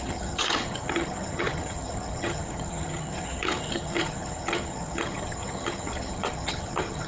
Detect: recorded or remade remade